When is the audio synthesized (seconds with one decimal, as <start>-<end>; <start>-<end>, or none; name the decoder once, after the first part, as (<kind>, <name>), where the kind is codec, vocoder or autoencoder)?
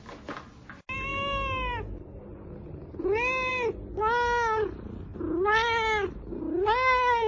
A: none